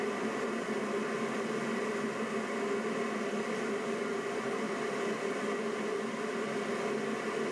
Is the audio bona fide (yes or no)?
yes